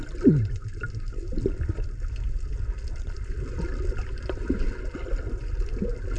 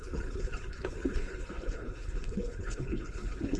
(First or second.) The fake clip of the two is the second